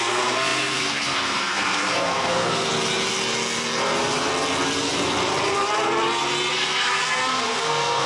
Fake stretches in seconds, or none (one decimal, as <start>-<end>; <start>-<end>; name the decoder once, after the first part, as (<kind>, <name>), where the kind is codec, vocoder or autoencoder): 0.0-2.7 (codec, SNAC); 6.5-8.1